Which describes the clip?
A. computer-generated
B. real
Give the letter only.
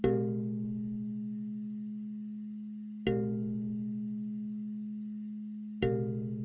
B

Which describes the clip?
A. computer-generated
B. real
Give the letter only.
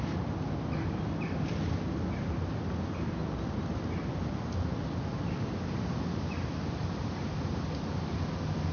B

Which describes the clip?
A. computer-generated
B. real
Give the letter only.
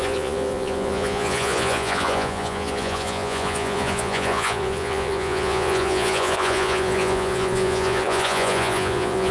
A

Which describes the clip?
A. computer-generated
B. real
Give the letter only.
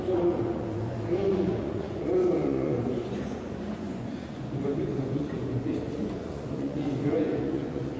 A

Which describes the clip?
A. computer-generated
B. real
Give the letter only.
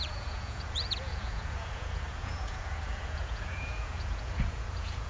A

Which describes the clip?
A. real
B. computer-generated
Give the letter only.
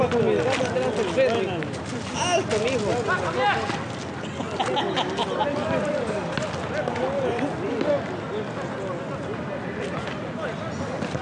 A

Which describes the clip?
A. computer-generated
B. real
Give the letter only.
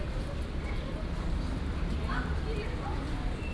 B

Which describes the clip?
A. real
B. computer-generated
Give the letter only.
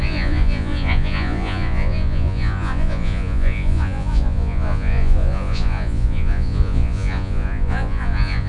B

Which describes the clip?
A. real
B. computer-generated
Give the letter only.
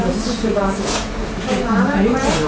B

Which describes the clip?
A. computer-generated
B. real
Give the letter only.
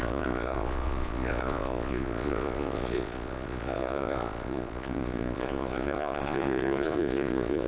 A